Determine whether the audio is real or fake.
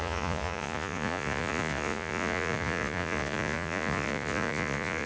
fake